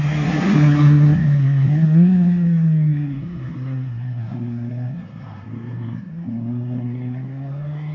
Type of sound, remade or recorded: remade